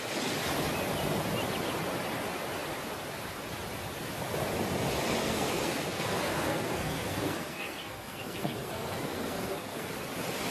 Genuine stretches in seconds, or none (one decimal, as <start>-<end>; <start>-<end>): 0.0-5.2; 9.9-10.5